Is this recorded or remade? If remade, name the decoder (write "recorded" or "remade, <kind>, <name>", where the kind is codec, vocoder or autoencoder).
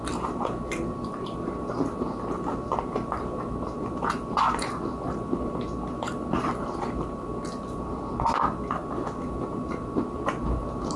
recorded